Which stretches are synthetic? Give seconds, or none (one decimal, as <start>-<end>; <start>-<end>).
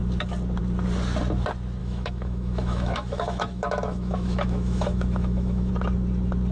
1.8-5.7